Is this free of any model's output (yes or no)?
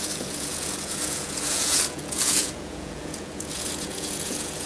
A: no